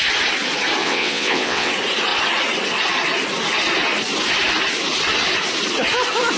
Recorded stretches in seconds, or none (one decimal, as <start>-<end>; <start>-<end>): 0.0-0.8; 1.7-6.4